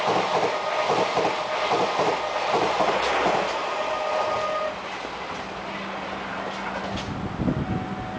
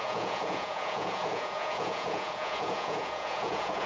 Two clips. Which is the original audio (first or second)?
first